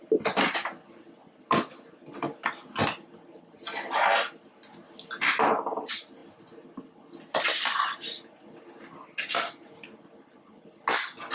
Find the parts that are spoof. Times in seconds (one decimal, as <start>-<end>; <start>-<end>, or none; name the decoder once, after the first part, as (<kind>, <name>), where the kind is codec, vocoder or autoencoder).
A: none